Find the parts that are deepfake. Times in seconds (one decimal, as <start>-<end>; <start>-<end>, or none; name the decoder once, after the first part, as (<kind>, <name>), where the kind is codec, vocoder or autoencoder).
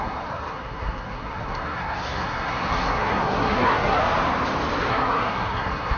0.0-4.0 (codec, SNAC); 4.9-6.0